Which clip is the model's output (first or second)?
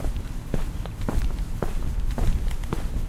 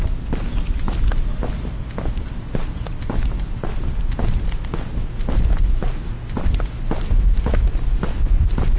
first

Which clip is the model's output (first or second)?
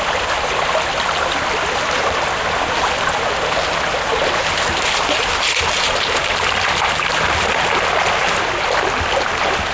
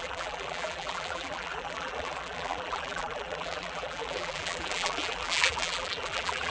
second